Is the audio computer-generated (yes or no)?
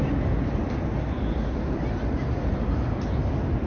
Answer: no